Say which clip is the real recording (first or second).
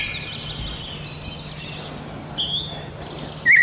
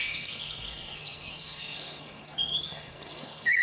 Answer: first